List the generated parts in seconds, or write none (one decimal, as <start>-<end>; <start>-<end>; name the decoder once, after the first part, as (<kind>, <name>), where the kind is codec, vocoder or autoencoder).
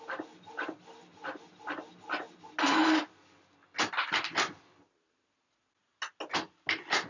none